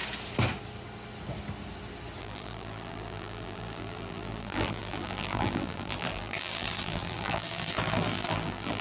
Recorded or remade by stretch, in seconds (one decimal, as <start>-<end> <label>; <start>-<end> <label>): 0.0-2.2 recorded; 2.2-8.8 remade